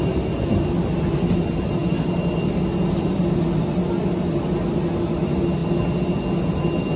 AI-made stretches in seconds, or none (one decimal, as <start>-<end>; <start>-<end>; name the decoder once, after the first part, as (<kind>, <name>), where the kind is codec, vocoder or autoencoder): none